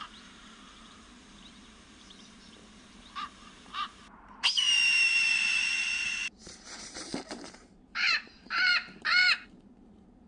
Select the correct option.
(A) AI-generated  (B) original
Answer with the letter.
A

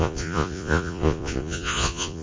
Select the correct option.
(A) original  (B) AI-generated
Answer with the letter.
B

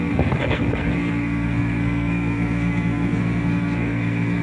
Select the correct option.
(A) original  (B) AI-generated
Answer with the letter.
B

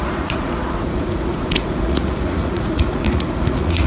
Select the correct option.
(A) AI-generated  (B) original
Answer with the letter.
A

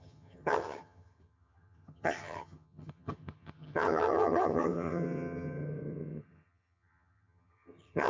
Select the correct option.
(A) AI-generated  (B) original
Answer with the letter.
A